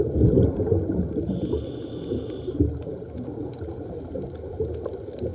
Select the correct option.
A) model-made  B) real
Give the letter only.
B